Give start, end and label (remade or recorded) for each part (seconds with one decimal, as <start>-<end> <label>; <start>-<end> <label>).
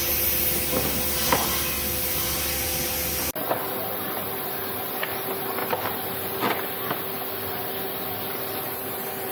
0.0-9.3 recorded